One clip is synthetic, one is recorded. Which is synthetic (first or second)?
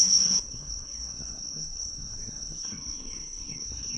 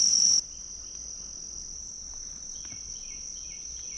first